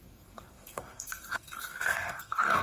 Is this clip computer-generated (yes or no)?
yes